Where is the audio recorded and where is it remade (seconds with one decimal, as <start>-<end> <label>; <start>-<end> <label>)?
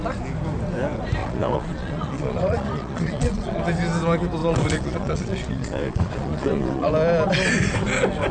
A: 0.0-1.2 recorded; 1.2-3.6 remade; 3.6-4.4 recorded; 4.4-6.9 remade; 6.9-8.3 recorded